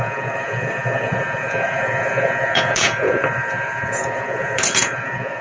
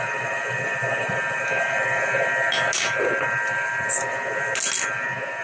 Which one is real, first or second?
second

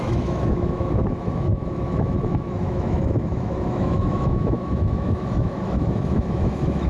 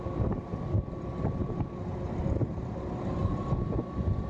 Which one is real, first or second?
second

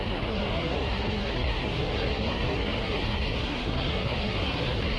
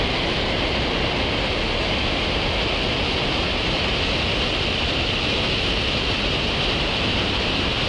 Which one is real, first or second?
second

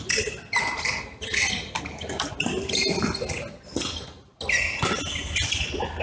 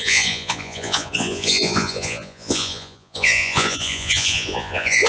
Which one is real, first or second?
first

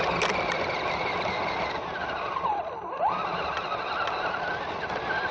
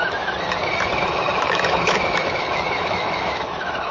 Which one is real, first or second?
first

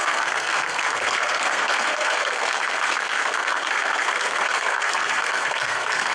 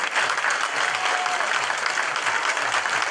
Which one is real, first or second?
second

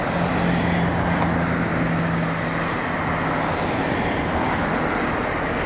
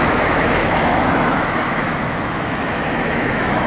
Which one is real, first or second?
first